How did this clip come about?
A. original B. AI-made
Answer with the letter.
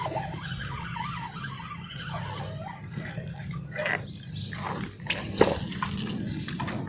A